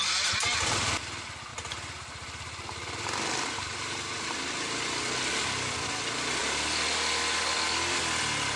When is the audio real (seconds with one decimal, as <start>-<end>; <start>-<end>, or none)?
0.0-8.6